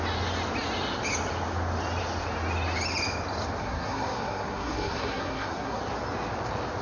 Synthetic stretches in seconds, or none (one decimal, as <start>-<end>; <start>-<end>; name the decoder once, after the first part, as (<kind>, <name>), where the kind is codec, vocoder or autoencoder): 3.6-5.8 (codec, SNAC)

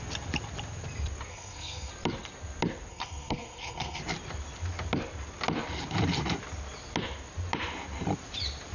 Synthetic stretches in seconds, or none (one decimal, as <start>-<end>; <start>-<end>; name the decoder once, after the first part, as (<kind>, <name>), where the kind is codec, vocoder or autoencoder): 1.3-1.9 (codec, SNAC); 2.9-4.0

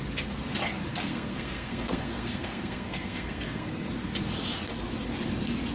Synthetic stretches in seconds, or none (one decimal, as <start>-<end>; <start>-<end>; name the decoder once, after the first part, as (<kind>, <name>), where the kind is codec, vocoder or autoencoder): 0.9-3.9 (codec, SNAC)

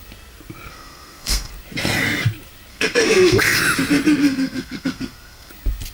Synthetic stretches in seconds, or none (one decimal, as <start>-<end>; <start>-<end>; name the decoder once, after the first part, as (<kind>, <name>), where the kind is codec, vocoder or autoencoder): 0.7-1.5 (codec, SNAC); 2.7-3.6; 4.2-5.5

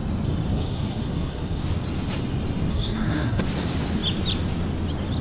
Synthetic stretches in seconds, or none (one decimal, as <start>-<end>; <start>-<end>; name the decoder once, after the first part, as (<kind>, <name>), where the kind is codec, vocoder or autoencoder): 0.5-1.6 (codec, SNAC); 2.7-3.4